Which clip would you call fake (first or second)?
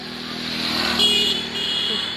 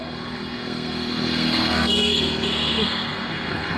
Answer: second